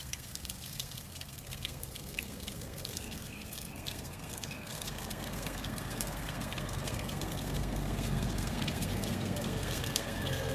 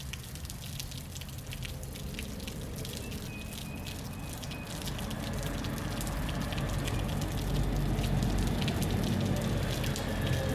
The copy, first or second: first